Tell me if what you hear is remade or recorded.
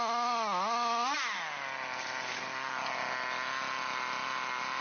recorded